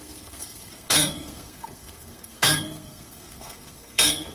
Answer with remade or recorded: remade